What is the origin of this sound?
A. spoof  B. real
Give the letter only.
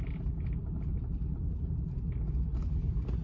A